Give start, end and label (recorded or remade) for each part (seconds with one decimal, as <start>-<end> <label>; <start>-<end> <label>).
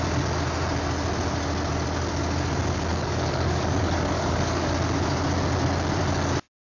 0.0-2.9 recorded; 2.9-4.7 remade; 4.7-6.7 recorded